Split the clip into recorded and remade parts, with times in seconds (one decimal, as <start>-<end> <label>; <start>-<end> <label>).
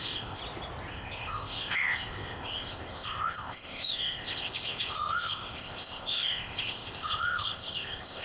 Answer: 0.0-0.4 remade; 0.4-0.9 recorded; 0.9-8.2 remade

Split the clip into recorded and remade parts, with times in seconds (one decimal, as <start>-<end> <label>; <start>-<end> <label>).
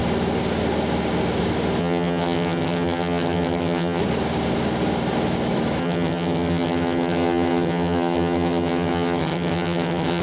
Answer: 0.0-1.8 recorded; 1.8-4.0 remade; 4.0-5.8 recorded; 5.8-10.2 remade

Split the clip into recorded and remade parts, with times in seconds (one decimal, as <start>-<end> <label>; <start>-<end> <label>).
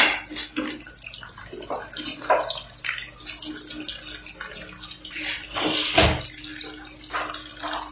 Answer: 0.0-0.4 remade; 0.4-5.1 recorded; 5.1-6.0 remade; 6.0-7.9 recorded